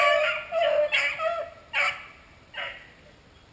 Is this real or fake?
real